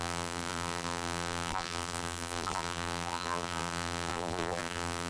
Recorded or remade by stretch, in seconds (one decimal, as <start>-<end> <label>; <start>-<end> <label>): 0.0-5.1 remade